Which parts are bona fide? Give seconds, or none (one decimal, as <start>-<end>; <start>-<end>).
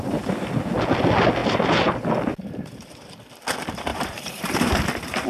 0.0-3.9; 4.7-5.3